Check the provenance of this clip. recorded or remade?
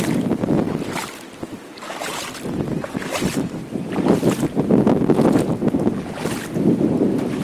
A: recorded